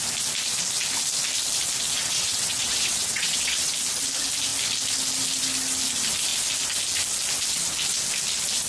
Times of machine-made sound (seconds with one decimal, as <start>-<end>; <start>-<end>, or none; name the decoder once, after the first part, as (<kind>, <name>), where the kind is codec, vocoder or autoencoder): 2.0-3.7 (vocoder, WaveNeXt)